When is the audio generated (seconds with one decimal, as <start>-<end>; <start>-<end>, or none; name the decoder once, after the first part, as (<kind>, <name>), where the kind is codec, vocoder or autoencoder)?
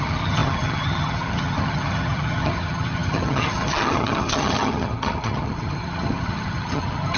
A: 0.0-7.2 (vocoder, HiFi-GAN)